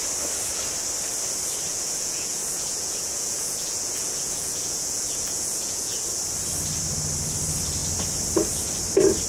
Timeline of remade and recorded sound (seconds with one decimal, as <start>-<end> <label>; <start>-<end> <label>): 0.0-1.7 recorded; 1.7-6.2 remade; 6.2-9.3 recorded